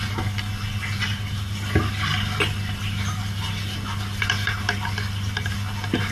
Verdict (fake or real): real